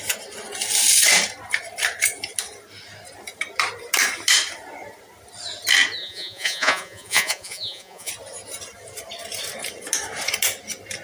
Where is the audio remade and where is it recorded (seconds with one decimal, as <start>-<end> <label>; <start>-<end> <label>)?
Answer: 0.0-6.0 recorded; 6.0-8.1 remade; 8.1-11.0 recorded